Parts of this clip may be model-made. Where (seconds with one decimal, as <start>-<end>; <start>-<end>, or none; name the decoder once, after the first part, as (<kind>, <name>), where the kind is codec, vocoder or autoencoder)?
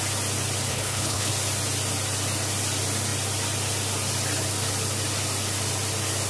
0.7-1.3 (codec, HILCodec)